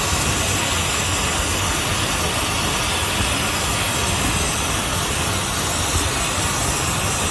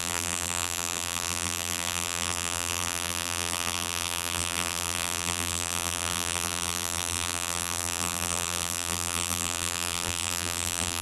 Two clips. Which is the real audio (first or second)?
first